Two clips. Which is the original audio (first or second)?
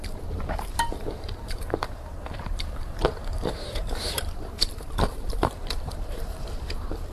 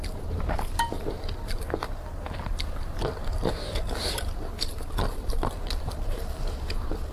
second